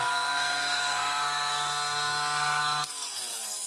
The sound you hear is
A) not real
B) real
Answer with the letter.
A